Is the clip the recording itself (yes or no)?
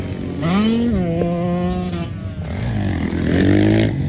yes